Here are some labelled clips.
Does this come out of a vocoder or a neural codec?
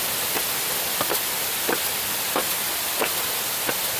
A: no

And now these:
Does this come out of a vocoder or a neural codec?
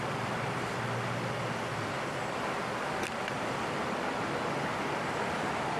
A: no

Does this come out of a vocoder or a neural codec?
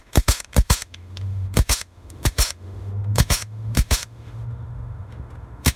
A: yes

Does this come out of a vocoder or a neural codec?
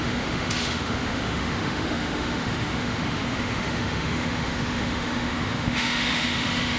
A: yes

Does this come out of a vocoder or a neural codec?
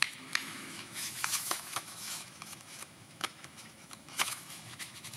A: yes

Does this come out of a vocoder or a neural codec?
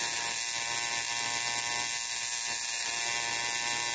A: no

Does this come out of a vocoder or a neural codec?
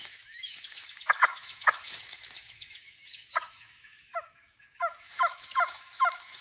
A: yes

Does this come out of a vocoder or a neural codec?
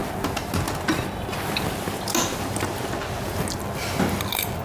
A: no